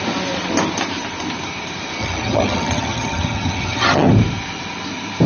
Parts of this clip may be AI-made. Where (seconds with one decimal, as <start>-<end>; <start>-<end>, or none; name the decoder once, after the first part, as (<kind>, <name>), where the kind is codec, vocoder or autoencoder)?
2.0-4.1 (vocoder, HiFi-GAN)